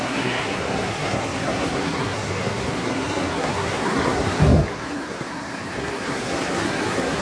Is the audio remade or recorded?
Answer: remade